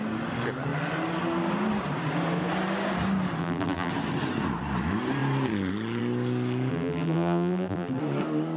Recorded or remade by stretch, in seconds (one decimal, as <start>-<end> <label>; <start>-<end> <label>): 0.0-3.4 recorded; 3.4-3.9 remade; 3.9-6.7 recorded; 6.7-8.0 remade; 8.0-8.6 recorded